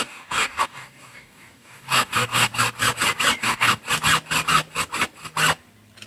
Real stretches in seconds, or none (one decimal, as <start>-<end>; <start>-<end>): 2.5-3.4; 3.8-6.1